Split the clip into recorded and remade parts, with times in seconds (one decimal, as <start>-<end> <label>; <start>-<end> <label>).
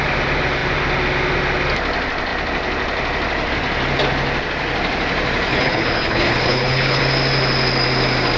0.0-5.5 recorded; 5.5-7.0 remade; 7.0-8.4 recorded